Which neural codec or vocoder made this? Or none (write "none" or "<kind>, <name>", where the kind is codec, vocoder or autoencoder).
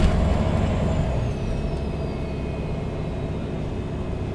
none